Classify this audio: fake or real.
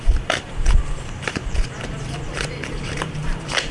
fake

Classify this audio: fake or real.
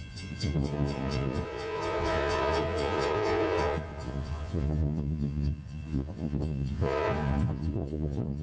fake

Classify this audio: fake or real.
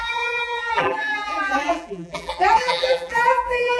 fake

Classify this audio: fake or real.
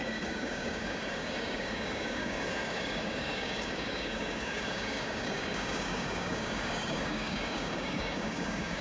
fake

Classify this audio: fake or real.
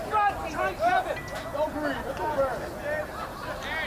real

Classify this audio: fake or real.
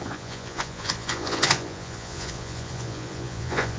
fake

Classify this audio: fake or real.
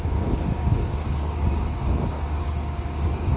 fake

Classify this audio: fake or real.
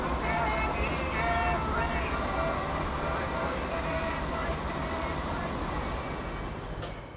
real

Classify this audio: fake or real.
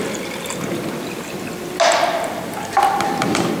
real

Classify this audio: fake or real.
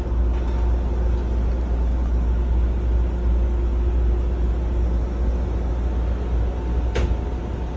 real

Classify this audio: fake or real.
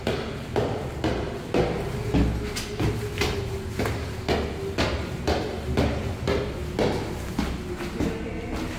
real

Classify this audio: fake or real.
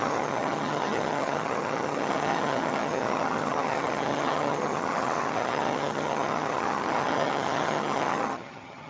fake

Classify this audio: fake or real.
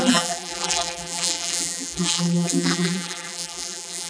fake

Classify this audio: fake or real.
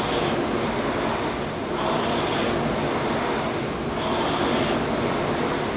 real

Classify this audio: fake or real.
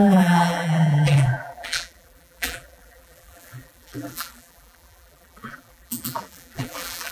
fake